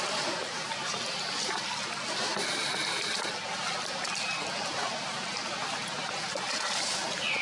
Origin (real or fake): real